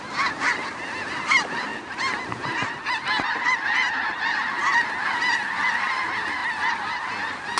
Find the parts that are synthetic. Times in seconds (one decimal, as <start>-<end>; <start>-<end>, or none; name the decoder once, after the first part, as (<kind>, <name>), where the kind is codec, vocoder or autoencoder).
0.0-1.7 (vocoder, BigVGAN v2); 3.3-6.4